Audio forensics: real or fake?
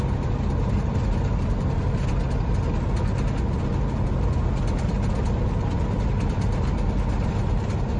real